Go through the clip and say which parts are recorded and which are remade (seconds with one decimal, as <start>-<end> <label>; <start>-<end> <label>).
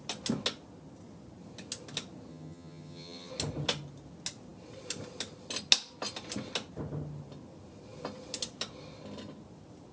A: 0.0-2.3 recorded; 2.3-3.3 remade; 3.3-9.9 recorded